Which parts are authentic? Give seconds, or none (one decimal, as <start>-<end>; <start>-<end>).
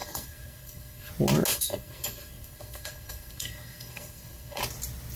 1.1-1.5; 4.6-5.2